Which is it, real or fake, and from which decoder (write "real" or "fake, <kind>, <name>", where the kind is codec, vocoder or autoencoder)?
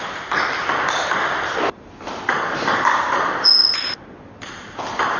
real